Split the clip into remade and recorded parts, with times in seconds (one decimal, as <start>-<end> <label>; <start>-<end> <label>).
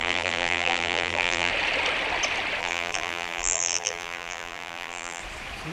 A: 0.0-1.5 remade; 1.5-2.6 recorded; 2.6-5.2 remade; 5.2-5.7 recorded